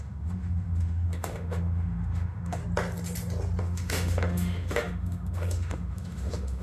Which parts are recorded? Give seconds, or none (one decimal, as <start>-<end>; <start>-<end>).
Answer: 2.6-3.6